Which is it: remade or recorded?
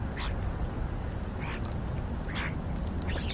recorded